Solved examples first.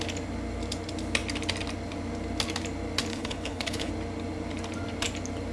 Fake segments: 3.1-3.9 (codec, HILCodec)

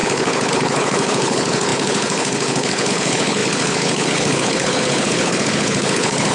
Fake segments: 0.0-6.3 (codec, HILCodec)

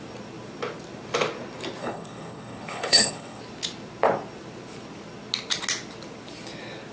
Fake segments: 1.8-3.4 (codec, HILCodec)